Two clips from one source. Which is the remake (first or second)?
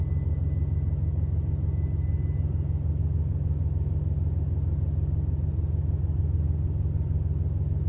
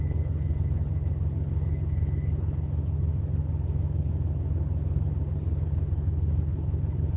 second